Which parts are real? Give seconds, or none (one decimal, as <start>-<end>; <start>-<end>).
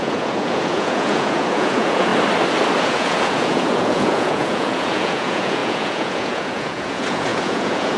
2.1-2.8